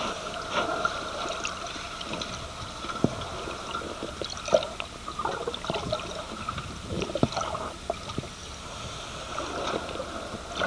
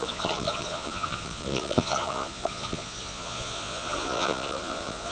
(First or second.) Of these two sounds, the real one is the first